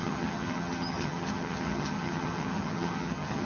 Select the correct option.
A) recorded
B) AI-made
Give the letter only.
B